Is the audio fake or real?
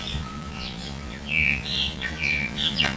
fake